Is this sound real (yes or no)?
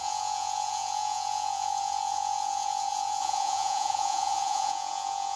no